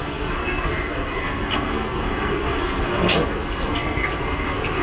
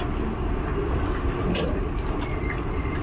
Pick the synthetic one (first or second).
first